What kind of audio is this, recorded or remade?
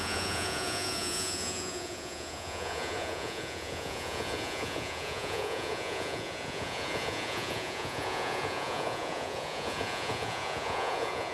remade